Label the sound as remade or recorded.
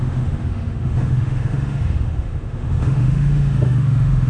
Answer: remade